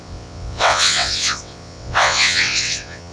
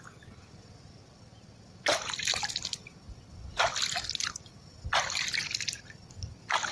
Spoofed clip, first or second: first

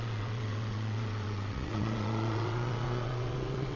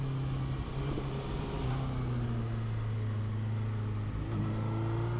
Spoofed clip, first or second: first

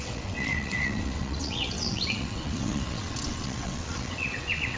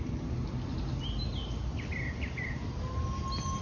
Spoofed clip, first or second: first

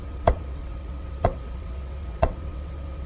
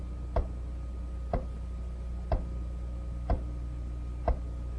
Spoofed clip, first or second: first